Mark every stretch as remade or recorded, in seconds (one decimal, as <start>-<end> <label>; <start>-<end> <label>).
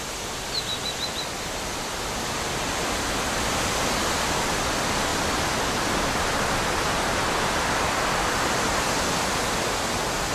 0.0-10.3 recorded